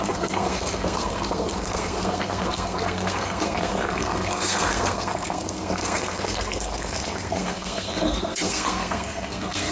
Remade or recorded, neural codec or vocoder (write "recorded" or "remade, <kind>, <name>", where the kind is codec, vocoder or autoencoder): remade, codec, SNAC